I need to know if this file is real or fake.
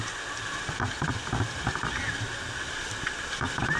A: real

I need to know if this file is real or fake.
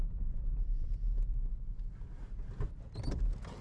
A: real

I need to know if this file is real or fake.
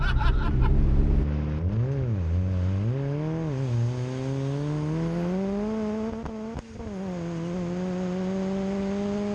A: real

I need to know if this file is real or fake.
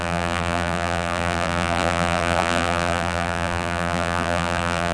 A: fake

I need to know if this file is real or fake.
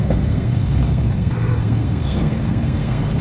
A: fake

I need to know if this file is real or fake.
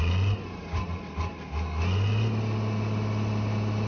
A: real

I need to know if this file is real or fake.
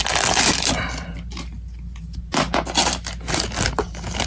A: real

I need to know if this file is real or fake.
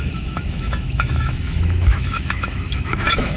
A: fake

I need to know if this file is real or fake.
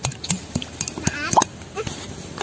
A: real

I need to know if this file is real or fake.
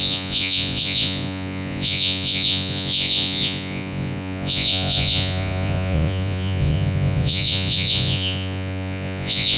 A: fake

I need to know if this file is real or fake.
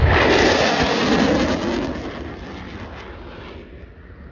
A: real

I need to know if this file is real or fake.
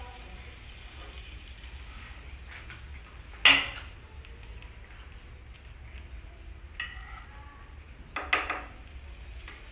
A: real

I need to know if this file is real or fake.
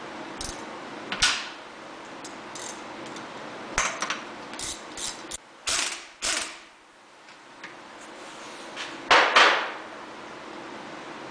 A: real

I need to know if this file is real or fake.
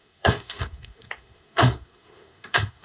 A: fake